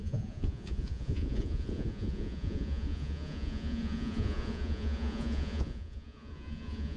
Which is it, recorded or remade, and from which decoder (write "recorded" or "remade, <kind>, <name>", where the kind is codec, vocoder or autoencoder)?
remade, vocoder, Vocos